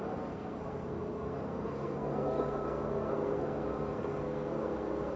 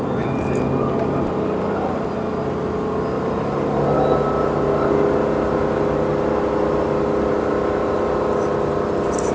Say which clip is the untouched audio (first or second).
second